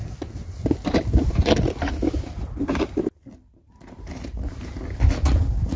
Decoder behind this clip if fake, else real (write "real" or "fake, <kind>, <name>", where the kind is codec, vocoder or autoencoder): real